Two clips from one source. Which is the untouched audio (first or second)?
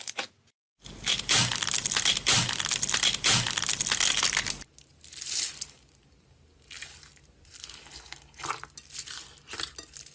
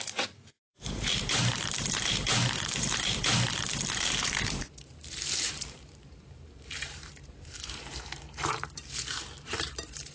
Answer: first